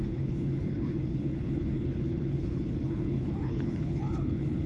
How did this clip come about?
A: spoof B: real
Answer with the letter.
A